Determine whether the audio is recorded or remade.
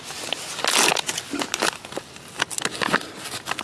recorded